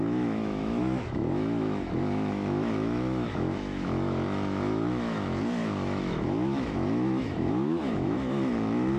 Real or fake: fake